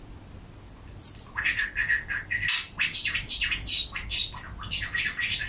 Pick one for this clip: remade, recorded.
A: recorded